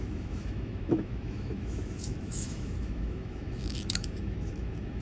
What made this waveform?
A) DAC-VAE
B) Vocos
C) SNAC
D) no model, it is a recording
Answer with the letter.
A